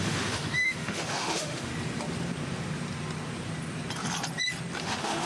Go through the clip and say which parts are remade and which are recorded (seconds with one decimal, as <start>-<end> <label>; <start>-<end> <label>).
0.0-1.7 remade; 1.7-4.8 recorded; 4.8-5.3 remade